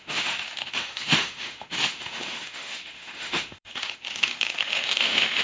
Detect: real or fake fake